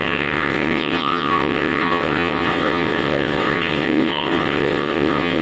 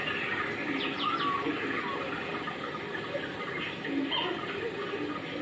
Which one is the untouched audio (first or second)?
second